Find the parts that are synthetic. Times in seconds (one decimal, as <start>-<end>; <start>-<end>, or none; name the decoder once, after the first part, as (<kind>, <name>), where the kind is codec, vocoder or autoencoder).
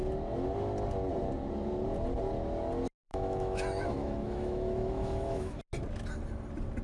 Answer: 3.1-5.6 (autoencoder, DAC-VAE)